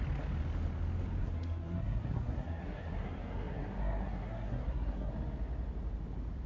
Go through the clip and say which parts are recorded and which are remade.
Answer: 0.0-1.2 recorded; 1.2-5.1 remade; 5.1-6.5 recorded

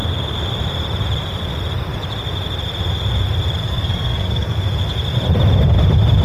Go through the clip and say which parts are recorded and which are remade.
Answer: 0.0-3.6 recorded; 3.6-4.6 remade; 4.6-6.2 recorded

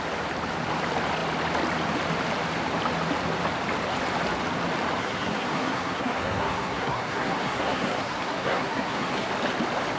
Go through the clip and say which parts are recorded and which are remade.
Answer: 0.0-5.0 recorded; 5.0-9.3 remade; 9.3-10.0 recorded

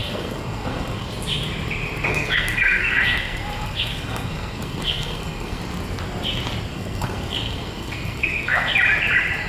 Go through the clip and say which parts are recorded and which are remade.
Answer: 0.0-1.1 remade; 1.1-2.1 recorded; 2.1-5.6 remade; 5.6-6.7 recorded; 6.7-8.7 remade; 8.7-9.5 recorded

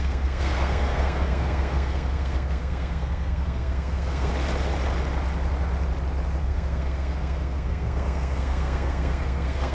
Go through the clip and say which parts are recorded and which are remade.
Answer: 0.0-4.3 remade; 4.3-6.4 recorded; 6.4-9.7 remade

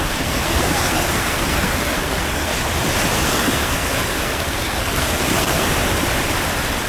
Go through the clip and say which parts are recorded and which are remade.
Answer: 0.0-2.5 remade; 2.5-3.1 recorded; 3.1-5.7 remade; 5.7-6.9 recorded

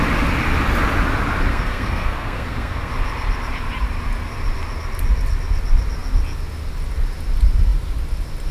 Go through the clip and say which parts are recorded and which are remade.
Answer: 0.0-1.5 recorded; 1.5-2.9 remade; 2.9-8.5 recorded